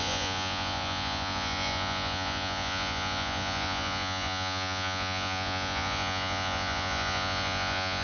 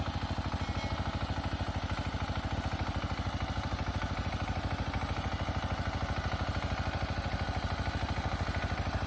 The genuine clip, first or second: second